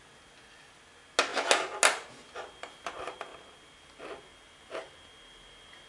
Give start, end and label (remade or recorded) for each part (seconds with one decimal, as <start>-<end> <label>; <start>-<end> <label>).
0.0-5.9 recorded